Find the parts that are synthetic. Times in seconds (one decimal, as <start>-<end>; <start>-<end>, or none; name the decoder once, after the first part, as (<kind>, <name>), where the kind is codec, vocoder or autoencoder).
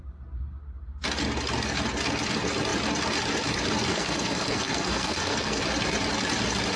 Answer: 3.9-5.6 (codec, SNAC)